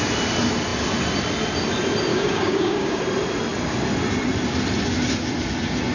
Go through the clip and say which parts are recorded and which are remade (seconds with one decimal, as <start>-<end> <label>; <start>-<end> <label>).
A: 0.0-2.1 recorded; 2.1-3.0 remade; 3.0-5.9 recorded